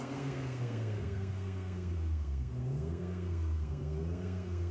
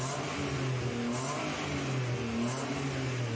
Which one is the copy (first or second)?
first